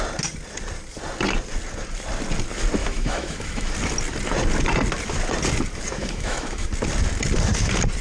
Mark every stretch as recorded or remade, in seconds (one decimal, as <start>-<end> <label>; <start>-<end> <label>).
0.0-2.8 recorded; 2.8-3.7 remade; 3.7-6.0 recorded; 6.0-6.7 remade; 6.7-8.0 recorded